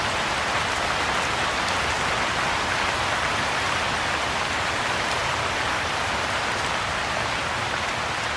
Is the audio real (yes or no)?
yes